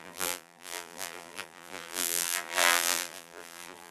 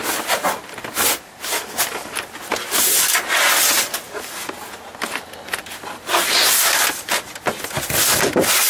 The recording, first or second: second